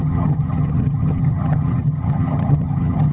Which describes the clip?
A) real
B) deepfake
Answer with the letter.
B